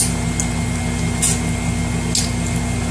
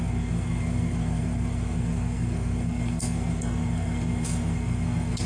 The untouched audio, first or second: first